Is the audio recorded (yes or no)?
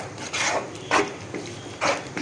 yes